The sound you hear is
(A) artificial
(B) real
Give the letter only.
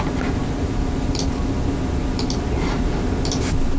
B